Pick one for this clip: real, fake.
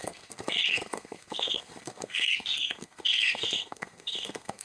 fake